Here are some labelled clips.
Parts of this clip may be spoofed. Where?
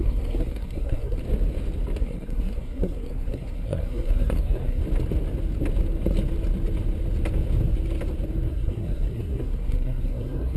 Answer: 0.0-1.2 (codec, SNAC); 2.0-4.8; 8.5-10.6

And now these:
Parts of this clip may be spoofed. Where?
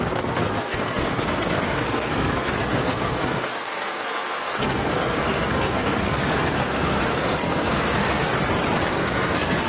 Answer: 0.0-8.3 (codec, SNAC); 8.9-9.7